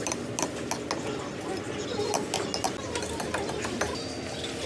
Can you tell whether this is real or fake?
real